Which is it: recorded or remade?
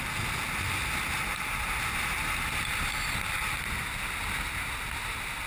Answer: recorded